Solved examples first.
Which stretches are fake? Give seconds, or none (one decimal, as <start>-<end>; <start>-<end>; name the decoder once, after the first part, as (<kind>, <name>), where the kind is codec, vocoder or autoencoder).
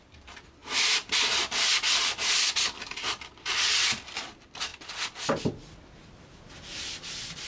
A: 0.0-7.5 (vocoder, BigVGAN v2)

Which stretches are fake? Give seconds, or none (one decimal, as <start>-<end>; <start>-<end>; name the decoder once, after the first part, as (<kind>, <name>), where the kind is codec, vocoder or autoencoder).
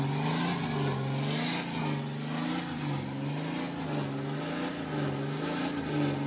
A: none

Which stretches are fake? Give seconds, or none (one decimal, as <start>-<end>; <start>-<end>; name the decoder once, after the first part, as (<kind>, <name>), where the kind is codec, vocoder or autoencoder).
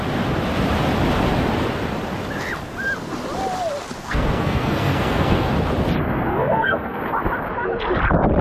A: 4.0-5.5 (codec, SNAC); 6.3-7.0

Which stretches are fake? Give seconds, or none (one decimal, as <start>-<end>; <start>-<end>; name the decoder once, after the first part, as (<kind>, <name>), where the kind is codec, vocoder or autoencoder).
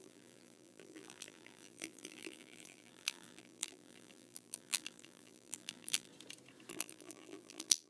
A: 0.0-6.1 (vocoder, BigVGAN v2); 6.7-7.9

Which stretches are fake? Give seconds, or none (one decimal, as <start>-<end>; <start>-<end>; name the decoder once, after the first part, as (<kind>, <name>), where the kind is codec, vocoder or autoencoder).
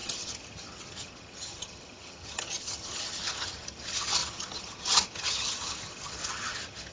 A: 0.0-6.9 (vocoder, HiFi-GAN)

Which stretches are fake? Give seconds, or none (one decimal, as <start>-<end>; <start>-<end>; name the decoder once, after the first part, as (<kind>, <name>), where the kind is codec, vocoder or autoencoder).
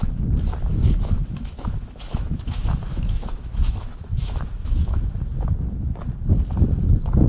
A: 0.7-5.1 (autoencoder, DAC-VAE)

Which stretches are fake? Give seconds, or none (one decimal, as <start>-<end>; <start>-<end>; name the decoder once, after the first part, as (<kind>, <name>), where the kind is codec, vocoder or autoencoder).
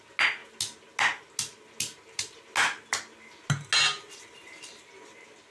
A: none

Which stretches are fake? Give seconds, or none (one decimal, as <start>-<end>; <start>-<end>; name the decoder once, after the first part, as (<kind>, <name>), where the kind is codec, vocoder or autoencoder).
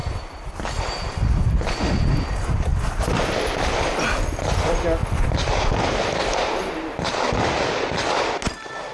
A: none